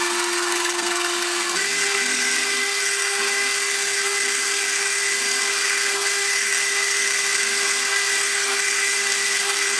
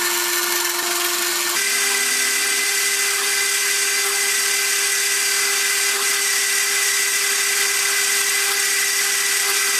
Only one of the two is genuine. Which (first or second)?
second